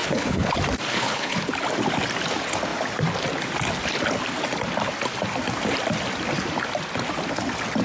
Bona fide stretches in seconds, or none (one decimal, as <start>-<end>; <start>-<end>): 0.5-0.9; 1.5-7.8